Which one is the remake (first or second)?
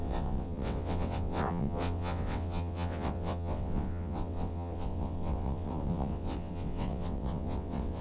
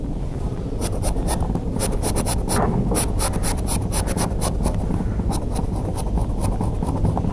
first